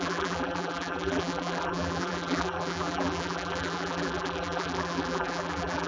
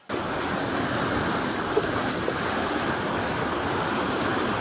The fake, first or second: first